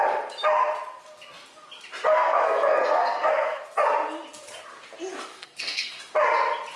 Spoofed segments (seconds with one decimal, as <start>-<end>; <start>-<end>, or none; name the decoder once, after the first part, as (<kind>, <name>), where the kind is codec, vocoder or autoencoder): 2.1-3.6 (codec, SNAC); 5.3-6.0